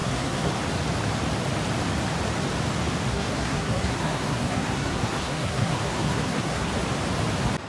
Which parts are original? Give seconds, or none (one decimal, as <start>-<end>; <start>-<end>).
0.5-3.1; 6.7-7.7